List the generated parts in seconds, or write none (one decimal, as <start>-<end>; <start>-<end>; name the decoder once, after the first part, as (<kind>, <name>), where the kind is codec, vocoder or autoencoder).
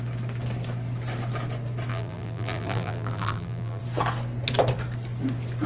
1.9-3.8 (vocoder, BigVGAN v2)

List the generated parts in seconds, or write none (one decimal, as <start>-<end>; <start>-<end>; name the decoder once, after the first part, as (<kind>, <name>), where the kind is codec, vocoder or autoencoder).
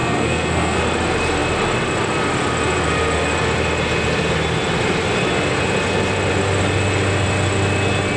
0.0-0.8 (codec, SNAC)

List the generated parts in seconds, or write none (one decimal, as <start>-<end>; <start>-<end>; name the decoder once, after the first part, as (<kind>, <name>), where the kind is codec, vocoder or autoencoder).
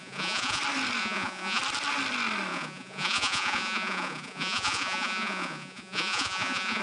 0.0-0.6 (vocoder, Vocos); 1.0-1.6; 2.5-6.8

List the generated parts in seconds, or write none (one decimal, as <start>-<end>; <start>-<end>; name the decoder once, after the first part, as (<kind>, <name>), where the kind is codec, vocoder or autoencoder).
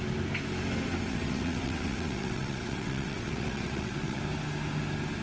1.1-4.2 (vocoder, WaveNeXt)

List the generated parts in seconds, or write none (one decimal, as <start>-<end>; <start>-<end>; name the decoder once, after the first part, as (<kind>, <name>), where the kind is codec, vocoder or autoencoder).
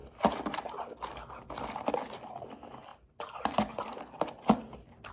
none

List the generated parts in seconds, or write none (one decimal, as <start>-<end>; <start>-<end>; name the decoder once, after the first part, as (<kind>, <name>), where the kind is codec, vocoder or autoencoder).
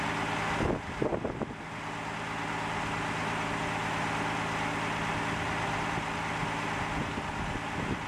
none